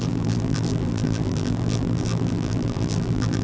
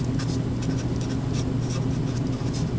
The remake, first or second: first